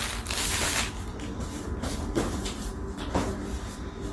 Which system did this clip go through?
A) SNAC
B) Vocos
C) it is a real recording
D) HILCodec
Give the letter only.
C